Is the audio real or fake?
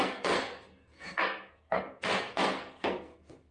fake